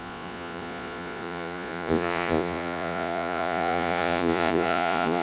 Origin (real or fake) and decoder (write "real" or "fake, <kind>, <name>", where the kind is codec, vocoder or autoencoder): fake, vocoder, Vocos